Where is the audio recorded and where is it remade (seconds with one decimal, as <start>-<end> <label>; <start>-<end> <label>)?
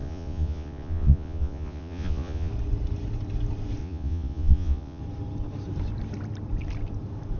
0.0-2.5 remade; 2.5-3.8 recorded; 3.8-5.0 remade; 5.0-7.4 recorded